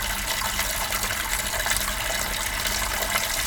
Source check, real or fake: real